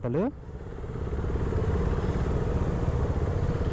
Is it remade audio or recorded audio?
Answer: recorded